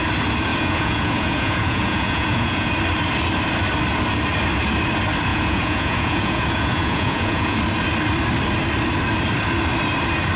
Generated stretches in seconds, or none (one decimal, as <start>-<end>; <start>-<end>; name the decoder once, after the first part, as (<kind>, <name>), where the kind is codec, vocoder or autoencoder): 0.5-2.7 (vocoder, Vocos); 5.3-7.6